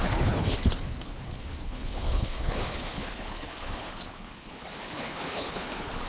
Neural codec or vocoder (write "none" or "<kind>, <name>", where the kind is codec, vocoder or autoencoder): codec, HILCodec